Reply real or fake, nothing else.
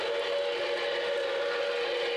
real